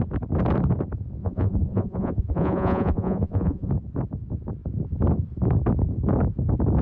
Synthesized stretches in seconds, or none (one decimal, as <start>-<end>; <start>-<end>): 1.2-3.7